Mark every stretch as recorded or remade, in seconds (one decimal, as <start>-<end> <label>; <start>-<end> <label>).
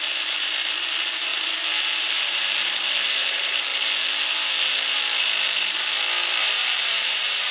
0.0-1.3 remade; 1.3-2.0 recorded; 2.0-3.7 remade; 3.7-6.4 recorded; 6.4-7.5 remade